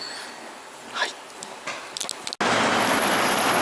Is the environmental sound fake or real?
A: real